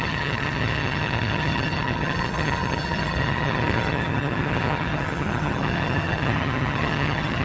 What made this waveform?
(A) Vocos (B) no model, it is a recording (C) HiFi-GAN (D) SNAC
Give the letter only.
C